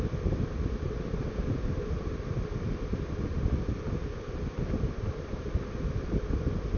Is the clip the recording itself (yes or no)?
yes